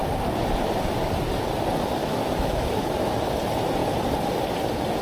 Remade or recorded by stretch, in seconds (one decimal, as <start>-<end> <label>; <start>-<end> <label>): 0.0-2.0 recorded; 2.0-2.9 remade; 2.9-5.0 recorded